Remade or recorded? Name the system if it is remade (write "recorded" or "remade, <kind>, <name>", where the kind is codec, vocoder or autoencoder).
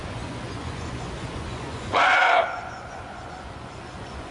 remade, vocoder, Vocos